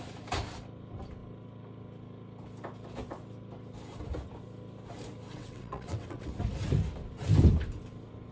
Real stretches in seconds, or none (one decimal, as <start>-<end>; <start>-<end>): 0.0-5.3; 6.3-8.3